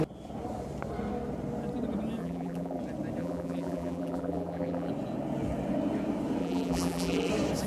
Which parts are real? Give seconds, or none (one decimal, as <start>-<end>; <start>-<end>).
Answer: 0.0-2.2; 2.8-3.2; 4.9-6.4; 7.3-7.7